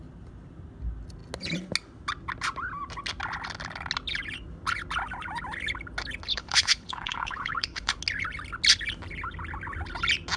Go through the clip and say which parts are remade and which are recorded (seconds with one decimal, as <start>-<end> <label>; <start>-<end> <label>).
0.0-6.3 recorded; 6.3-8.0 remade; 8.0-10.4 recorded